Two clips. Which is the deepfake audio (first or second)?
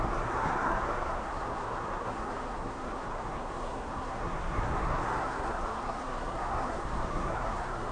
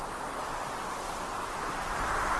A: first